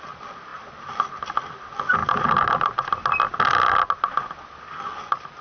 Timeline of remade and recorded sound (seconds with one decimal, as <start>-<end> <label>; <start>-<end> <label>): 0.0-5.4 recorded